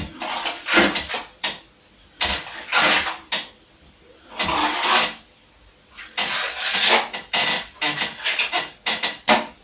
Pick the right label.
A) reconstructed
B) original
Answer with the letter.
B